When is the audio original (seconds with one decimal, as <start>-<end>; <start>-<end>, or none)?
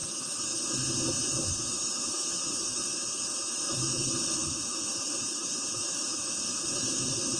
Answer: none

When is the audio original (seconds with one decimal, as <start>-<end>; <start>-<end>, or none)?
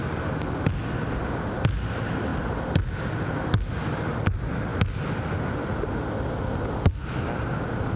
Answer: 0.0-8.0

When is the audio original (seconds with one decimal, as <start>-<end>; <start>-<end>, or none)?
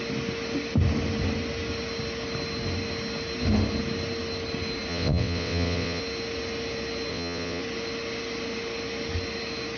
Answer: 0.0-4.9; 6.0-7.1; 7.6-9.8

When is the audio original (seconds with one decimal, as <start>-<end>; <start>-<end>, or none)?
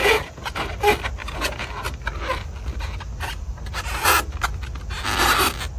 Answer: 0.6-1.2; 1.7-5.8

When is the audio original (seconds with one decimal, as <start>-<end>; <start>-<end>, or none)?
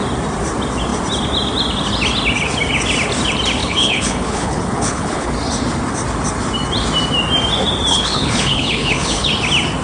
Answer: 0.0-3.6; 5.3-7.9; 9.3-9.8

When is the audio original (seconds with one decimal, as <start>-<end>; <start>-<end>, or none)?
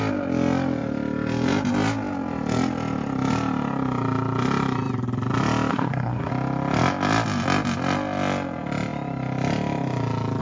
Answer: 0.0-5.7; 6.3-10.4